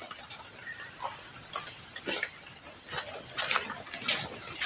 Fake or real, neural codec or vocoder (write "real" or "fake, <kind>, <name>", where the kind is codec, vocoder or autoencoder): real